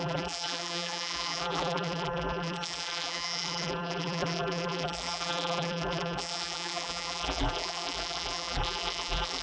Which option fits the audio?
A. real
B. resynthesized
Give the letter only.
B